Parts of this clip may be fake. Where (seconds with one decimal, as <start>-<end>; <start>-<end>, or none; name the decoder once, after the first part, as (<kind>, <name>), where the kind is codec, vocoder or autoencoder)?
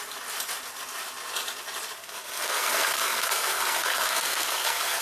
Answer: 2.0-5.0 (codec, SNAC)